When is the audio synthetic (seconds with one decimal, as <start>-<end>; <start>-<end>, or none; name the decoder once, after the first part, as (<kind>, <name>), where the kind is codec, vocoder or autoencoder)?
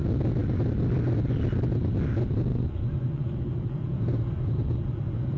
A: 2.5-3.4 (vocoder, Vocos)